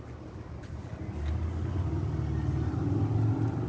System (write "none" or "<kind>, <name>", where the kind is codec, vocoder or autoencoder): none